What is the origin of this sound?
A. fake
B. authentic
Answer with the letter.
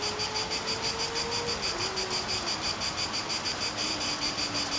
B